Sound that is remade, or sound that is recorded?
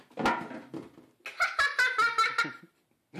recorded